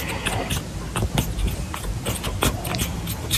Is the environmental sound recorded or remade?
recorded